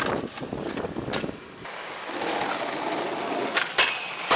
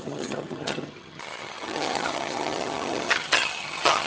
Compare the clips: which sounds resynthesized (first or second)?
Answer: second